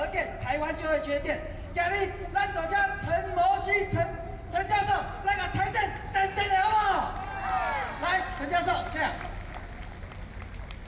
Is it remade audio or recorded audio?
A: recorded